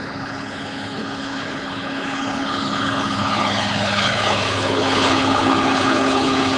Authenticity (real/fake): fake